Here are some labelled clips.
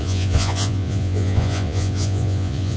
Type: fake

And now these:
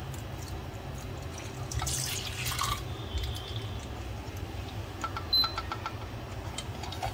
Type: real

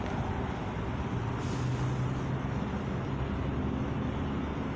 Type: real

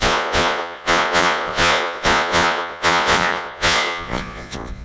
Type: fake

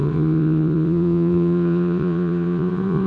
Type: fake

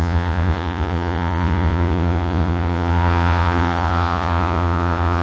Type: fake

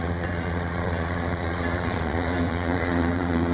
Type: fake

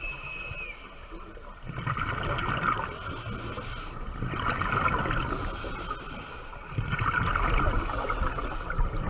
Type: real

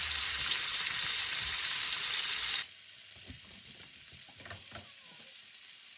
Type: fake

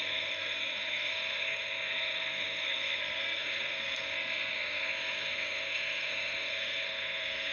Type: fake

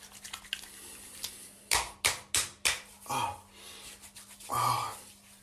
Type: real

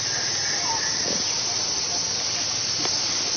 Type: real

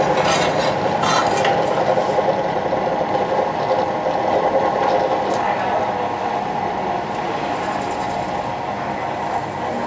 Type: real